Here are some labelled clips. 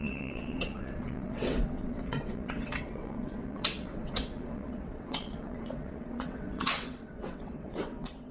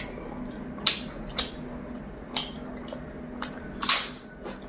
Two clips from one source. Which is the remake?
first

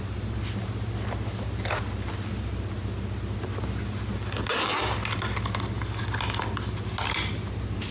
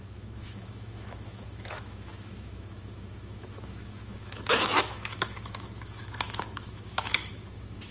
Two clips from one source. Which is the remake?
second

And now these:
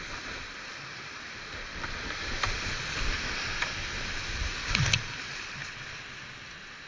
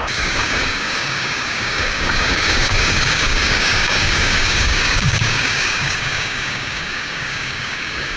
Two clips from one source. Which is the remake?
second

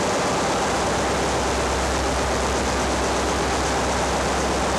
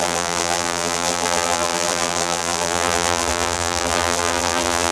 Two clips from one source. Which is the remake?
second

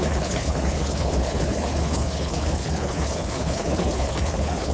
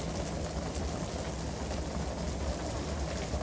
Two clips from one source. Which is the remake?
first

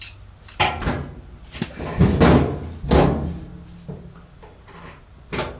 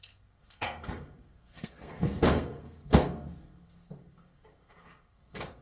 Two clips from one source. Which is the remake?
second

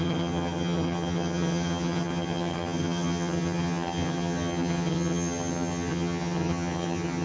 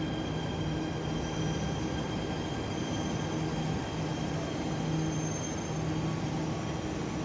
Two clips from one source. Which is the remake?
first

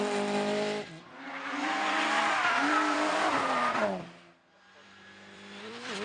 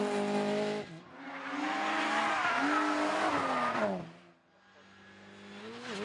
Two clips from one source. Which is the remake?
first